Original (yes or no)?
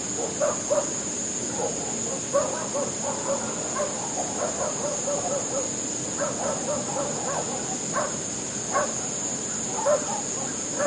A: yes